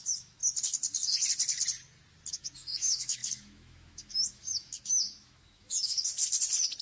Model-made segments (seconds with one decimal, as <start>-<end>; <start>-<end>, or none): 0.0-0.4; 2.3-6.2